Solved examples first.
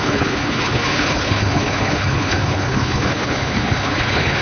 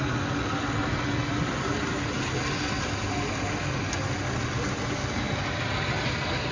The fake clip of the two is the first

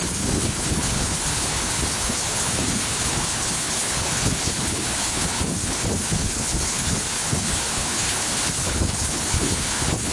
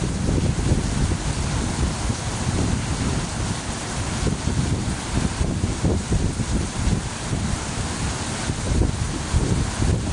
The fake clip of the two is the first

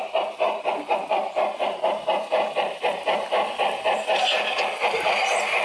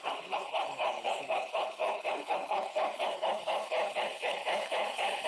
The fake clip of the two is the second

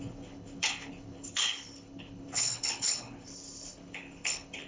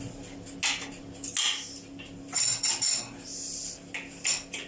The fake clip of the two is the first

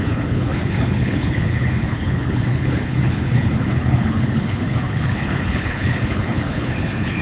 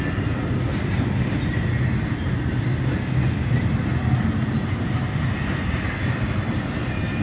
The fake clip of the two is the first